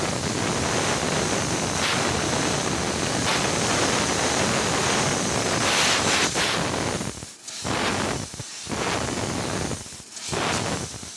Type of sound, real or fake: real